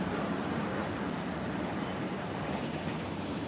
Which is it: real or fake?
fake